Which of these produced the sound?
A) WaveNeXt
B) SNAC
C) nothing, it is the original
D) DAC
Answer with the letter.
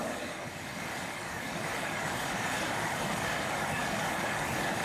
D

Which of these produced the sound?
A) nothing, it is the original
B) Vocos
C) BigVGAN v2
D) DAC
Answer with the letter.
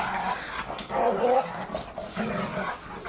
A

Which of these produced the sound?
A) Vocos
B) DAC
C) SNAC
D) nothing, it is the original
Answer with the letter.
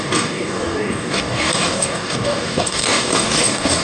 B